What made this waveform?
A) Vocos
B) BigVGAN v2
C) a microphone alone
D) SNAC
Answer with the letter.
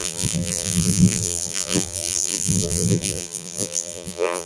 B